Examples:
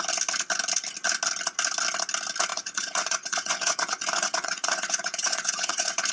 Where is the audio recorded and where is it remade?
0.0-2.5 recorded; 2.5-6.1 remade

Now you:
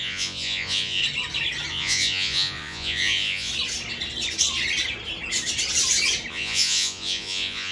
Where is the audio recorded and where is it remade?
0.0-1.0 remade; 1.0-1.7 recorded; 1.7-3.5 remade; 3.5-6.3 recorded; 6.3-7.7 remade

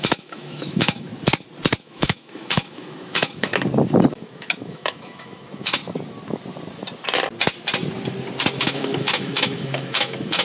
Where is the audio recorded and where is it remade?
0.0-1.1 remade; 1.1-1.8 recorded; 1.8-3.5 remade; 3.5-4.1 recorded; 4.1-5.8 remade; 5.8-8.6 recorded; 8.6-10.4 remade

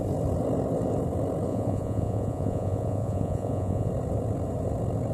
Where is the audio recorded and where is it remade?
0.0-1.5 recorded; 1.5-3.9 remade; 3.9-5.1 recorded

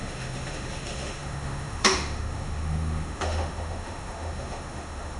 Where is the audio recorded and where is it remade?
0.0-5.2 remade

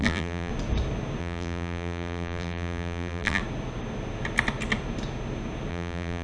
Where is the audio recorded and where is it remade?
0.0-0.5 remade; 0.5-1.2 recorded; 1.2-3.4 remade; 3.4-5.7 recorded; 5.7-6.2 remade

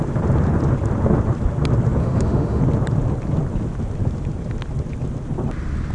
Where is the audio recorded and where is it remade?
0.0-2.0 recorded; 2.0-2.6 remade; 2.6-5.9 recorded

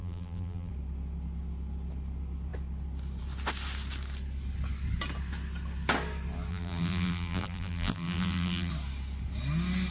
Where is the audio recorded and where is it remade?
0.0-0.7 remade; 0.7-6.5 recorded; 6.5-8.7 remade; 8.7-9.9 recorded